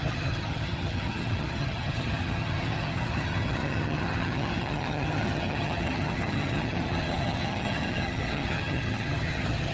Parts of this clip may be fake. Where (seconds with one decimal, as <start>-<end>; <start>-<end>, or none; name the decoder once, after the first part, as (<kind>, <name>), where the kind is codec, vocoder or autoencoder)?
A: 0.0-9.7 (vocoder, HiFi-GAN)